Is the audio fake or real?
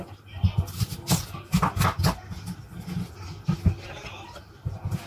real